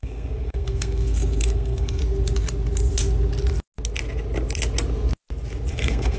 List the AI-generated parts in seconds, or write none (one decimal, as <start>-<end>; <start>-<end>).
0.0-2.0; 5.7-6.2